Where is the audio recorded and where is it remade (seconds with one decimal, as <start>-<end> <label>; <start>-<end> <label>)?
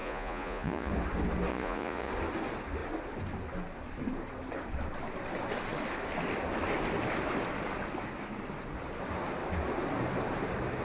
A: 0.0-0.9 remade; 0.9-1.5 recorded; 1.5-2.1 remade; 2.1-10.8 recorded